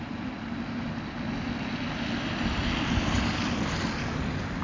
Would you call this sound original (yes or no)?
yes